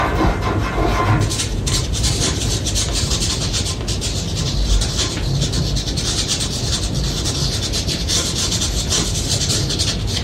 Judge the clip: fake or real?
real